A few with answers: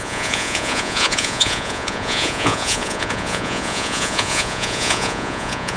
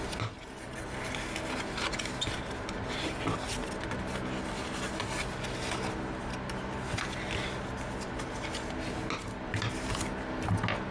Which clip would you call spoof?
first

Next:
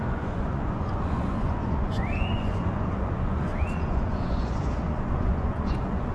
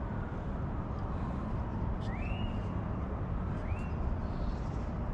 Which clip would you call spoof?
first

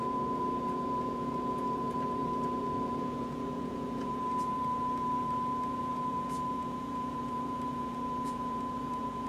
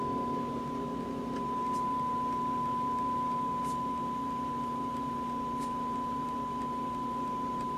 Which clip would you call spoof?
first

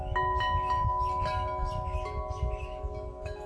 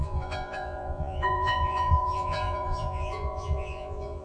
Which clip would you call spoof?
second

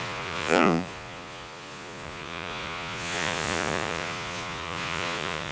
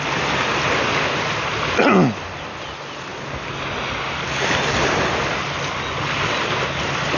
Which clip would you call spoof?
first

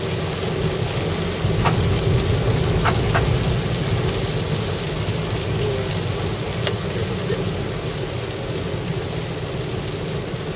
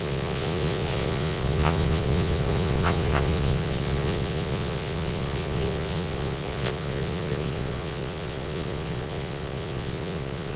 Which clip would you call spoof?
second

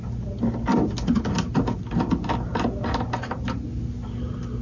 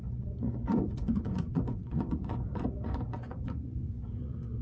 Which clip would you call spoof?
second